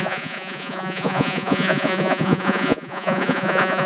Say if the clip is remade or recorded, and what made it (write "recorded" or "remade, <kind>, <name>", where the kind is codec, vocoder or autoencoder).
remade, vocoder, Vocos